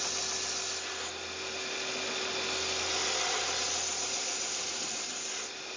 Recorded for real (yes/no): yes